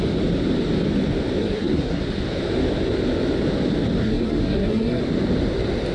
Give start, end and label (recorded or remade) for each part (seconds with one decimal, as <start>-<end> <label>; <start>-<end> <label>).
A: 0.0-1.4 recorded; 1.4-2.0 remade; 2.0-4.0 recorded; 4.0-5.0 remade; 5.0-5.9 recorded